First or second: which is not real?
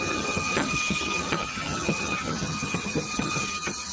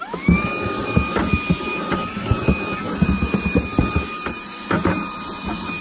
first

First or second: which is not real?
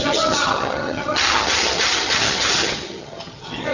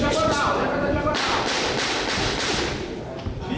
first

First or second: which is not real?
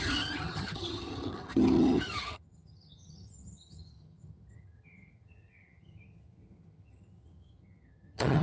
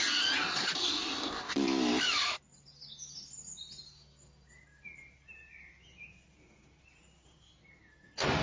first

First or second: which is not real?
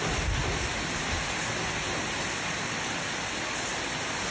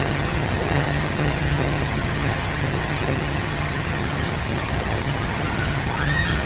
second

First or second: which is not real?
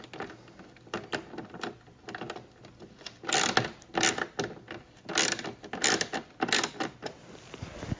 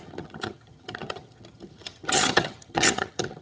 second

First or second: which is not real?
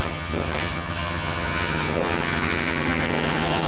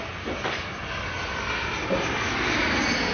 first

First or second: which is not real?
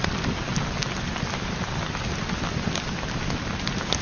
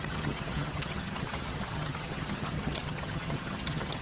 second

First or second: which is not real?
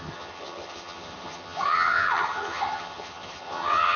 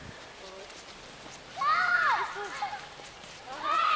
first